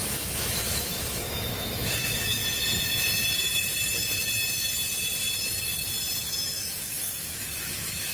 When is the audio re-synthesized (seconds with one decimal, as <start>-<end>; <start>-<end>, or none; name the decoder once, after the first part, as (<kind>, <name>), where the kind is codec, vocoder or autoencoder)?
0.0-2.4 (autoencoder, DAC-VAE); 6.2-8.1